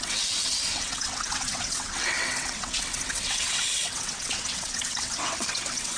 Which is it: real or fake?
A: fake